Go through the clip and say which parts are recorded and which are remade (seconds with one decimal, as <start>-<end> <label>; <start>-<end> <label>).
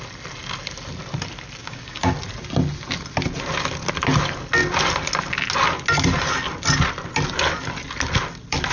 0.0-1.6 recorded; 1.6-2.1 remade; 2.1-8.7 recorded